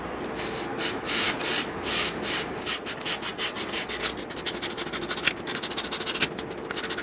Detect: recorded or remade recorded